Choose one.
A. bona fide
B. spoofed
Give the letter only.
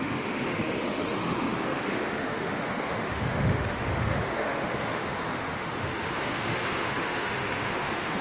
B